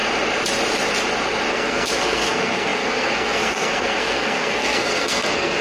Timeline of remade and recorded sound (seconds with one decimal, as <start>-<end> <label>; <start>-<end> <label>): 0.0-1.5 recorded; 1.5-5.6 remade